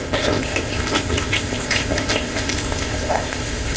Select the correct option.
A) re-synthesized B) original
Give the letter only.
A